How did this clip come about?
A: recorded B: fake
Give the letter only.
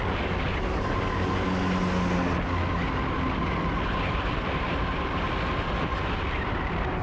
A